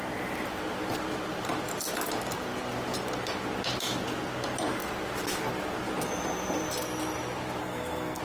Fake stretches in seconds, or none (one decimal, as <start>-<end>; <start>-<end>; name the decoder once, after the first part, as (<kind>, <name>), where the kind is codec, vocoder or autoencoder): 7.6-8.2 (codec, SNAC)